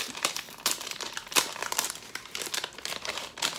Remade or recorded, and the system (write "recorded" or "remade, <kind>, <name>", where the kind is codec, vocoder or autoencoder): remade, vocoder, BigVGAN v2